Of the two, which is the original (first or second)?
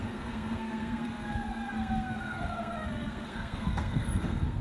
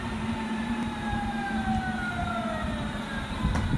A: second